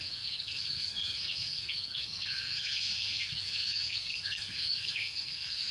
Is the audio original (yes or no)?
no